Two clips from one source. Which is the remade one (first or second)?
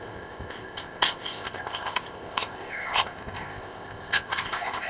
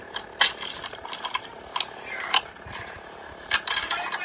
first